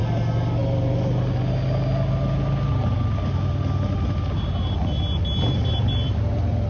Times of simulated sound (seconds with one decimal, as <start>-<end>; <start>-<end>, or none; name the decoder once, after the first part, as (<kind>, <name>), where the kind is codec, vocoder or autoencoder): 5.7-6.2 (vocoder, BigVGAN v2)